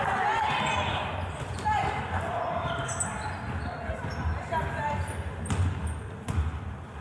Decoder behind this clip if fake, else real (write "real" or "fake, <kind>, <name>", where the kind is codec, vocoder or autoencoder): real